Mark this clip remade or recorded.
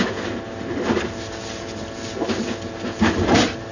recorded